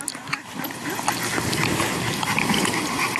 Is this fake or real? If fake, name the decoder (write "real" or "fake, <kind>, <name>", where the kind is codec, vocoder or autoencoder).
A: real